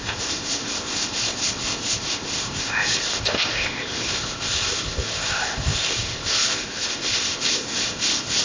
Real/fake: fake